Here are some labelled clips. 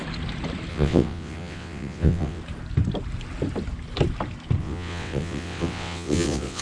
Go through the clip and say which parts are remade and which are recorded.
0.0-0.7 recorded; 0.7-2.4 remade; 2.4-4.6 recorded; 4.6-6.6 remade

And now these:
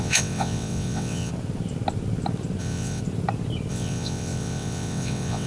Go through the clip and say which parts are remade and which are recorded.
0.0-1.3 remade; 1.3-2.6 recorded; 2.6-3.0 remade; 3.0-3.7 recorded; 3.7-5.5 remade

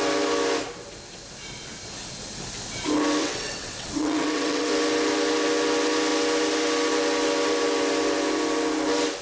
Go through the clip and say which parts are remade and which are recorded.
0.0-3.2 recorded; 3.2-4.7 remade; 4.7-9.2 recorded

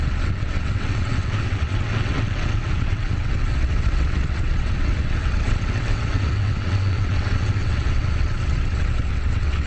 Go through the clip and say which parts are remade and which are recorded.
0.0-9.7 remade

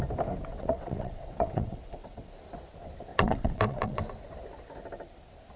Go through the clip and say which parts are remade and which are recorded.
0.0-0.5 recorded; 0.5-2.3 remade; 2.3-3.1 recorded; 3.1-4.0 remade; 4.0-5.6 recorded

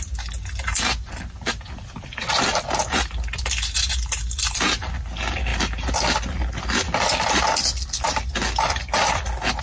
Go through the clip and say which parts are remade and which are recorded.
0.0-9.6 recorded